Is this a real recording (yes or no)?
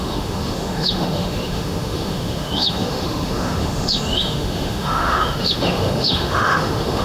no